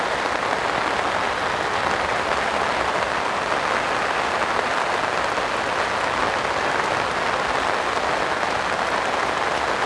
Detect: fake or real real